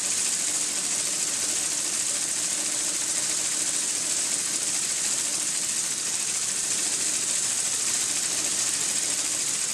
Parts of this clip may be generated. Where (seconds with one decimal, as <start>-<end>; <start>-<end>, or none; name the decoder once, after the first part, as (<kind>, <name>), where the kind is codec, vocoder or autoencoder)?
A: none